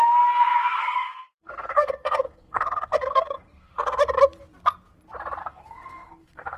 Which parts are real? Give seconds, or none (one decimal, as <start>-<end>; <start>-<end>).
0.0-0.8; 4.0-5.4